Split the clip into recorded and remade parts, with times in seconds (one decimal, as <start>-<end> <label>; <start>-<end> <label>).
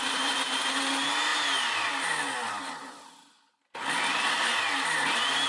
0.0-5.5 recorded